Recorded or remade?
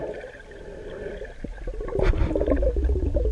recorded